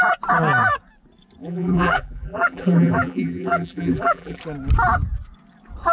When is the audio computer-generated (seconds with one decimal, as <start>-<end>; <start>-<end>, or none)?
1.4-4.4